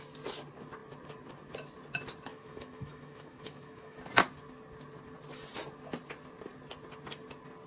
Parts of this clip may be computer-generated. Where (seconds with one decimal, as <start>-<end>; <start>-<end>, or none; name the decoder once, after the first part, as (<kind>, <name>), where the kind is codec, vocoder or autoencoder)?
2.3-4.0 (autoencoder, DAC-VAE)